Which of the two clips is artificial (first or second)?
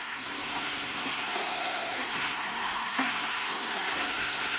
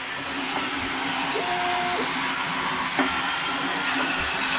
first